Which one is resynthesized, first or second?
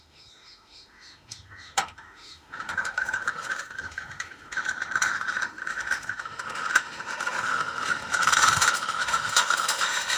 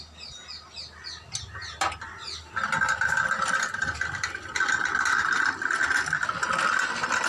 first